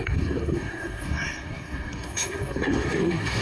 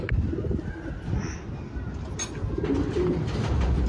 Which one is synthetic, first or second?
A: first